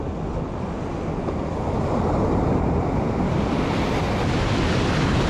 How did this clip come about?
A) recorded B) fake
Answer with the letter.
A